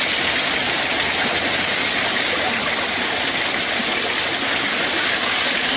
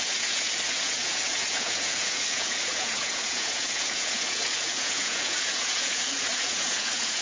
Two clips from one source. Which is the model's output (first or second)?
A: second